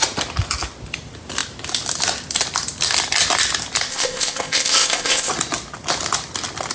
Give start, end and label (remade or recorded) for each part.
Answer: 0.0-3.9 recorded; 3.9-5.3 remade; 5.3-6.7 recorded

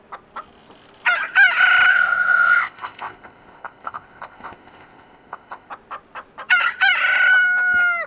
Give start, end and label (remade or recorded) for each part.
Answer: 0.0-1.9 recorded; 1.9-5.7 remade; 5.7-8.1 recorded

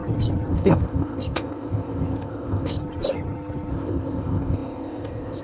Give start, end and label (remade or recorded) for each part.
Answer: 0.0-0.5 recorded; 0.5-2.8 remade; 2.8-3.7 recorded; 3.7-5.4 remade

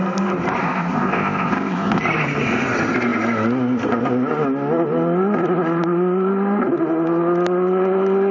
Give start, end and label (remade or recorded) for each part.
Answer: 0.0-0.6 recorded; 0.6-2.0 remade; 2.0-8.3 recorded

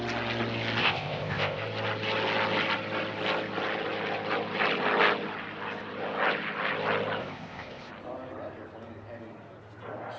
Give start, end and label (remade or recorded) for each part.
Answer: 0.0-0.8 recorded; 0.8-1.6 remade; 1.6-7.2 recorded; 7.2-7.9 remade; 7.9-10.2 recorded